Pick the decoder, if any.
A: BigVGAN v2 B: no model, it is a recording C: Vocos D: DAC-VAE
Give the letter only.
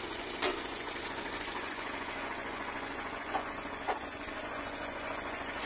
C